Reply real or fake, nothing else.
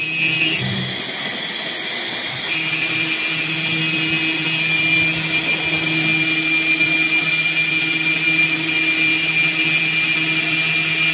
real